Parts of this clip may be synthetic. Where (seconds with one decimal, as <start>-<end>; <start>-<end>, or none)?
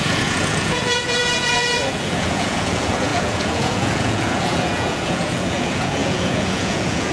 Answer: 0.0-7.1